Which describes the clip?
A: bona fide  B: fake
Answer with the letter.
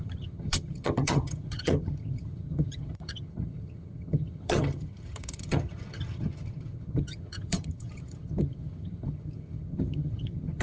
B